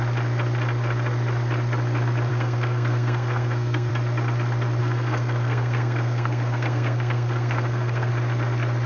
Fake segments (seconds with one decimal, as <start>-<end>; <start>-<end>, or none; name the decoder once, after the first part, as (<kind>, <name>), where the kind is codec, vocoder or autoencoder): 2.3-3.9 (codec, SNAC); 4.8-8.1

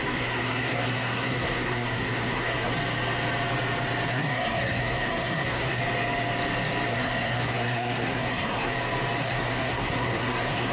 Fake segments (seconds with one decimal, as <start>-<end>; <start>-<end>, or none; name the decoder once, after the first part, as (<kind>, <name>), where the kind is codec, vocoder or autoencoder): 0.0-2.7 (codec, SNAC); 4.1-5.8; 6.9-8.7; 9.2-10.7

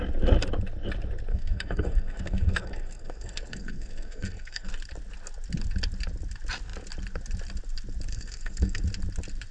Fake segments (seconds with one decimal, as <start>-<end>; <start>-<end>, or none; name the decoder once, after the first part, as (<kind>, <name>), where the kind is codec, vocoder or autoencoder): 1.3-4.7 (codec, SNAC); 8.1-8.8